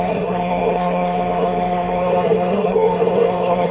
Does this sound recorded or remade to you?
remade